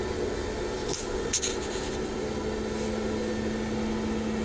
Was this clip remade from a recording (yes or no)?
no